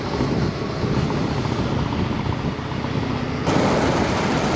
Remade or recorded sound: recorded